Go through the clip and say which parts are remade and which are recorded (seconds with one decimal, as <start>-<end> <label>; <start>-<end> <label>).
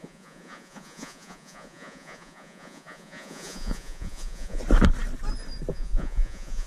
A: 0.0-4.6 remade; 4.6-5.7 recorded; 5.7-6.7 remade